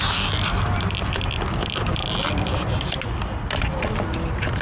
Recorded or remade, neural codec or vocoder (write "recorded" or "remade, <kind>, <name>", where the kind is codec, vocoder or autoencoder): recorded